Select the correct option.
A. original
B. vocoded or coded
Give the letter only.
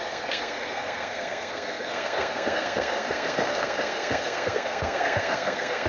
B